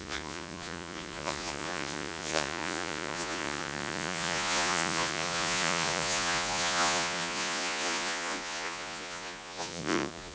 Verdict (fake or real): fake